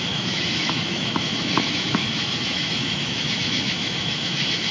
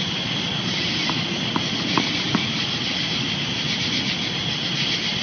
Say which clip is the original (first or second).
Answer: second